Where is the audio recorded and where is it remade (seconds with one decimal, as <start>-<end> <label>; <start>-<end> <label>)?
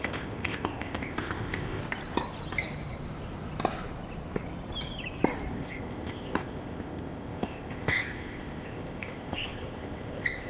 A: 0.0-1.8 remade; 1.8-5.5 recorded; 5.5-10.5 remade